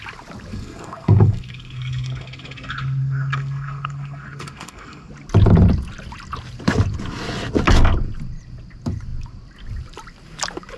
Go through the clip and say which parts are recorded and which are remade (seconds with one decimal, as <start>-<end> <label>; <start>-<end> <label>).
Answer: 0.0-0.5 recorded; 0.5-5.1 remade; 5.1-10.8 recorded